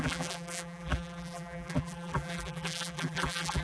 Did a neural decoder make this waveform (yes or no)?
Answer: yes